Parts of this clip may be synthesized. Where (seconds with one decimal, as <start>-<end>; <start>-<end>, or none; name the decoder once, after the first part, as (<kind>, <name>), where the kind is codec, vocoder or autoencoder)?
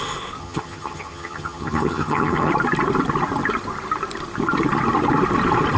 0.4-2.5 (vocoder, HiFi-GAN)